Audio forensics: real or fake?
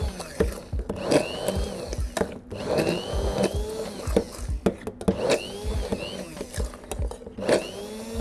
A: real